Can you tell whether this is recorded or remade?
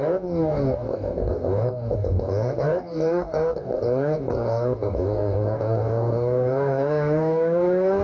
remade